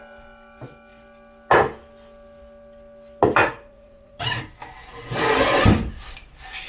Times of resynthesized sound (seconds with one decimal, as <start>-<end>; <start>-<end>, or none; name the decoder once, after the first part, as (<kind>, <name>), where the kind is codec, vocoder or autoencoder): 3.4-4.4 (vocoder, Vocos)